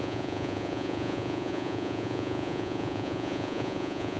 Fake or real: fake